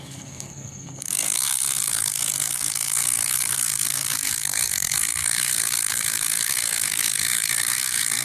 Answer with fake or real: fake